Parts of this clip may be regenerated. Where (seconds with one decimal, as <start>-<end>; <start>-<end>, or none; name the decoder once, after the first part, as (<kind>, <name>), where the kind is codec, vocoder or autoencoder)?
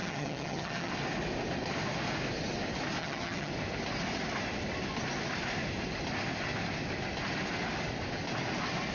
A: 0.0-0.9 (vocoder, HiFi-GAN); 3.0-3.5